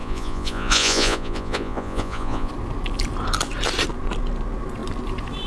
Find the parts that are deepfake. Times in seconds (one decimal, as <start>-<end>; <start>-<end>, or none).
0.0-2.5